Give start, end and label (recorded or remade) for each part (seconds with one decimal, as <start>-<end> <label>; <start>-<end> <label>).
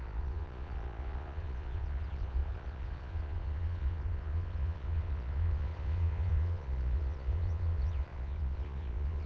0.0-9.3 remade